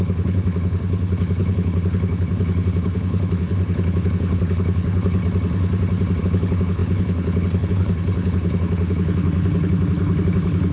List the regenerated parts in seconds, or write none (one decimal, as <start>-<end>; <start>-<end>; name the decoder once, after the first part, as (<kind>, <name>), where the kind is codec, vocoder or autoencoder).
0.0-5.2 (codec, HILCodec); 6.2-10.7